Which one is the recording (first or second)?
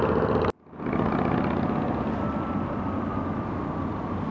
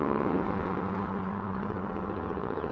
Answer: first